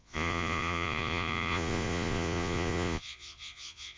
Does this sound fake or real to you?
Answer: fake